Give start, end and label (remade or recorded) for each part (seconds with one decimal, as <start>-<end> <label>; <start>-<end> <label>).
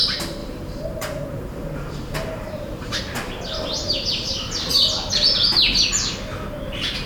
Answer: 0.0-0.4 recorded; 0.4-4.7 remade; 4.7-7.1 recorded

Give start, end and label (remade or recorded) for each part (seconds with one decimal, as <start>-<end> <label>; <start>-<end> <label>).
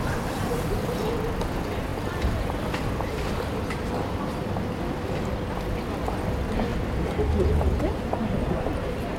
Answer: 0.0-1.9 recorded; 1.9-5.2 remade; 5.2-6.7 recorded; 6.7-7.5 remade; 7.5-9.2 recorded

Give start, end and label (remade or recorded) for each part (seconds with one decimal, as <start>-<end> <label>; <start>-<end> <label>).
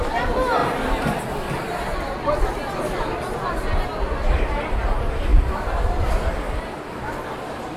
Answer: 0.0-0.6 recorded; 0.6-2.5 remade; 2.5-5.3 recorded; 5.3-6.3 remade; 6.3-7.8 recorded